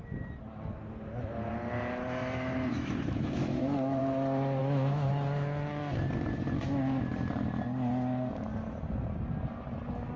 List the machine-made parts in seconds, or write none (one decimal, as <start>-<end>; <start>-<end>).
2.2-4.0; 4.6-5.1